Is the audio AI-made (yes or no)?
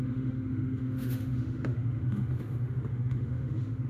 yes